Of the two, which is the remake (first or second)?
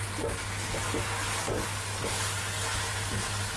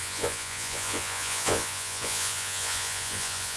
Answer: second